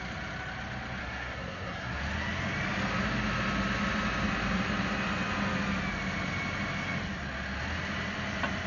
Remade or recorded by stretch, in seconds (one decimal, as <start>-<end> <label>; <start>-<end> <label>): 0.0-1.0 recorded; 1.0-2.0 remade; 2.0-8.7 recorded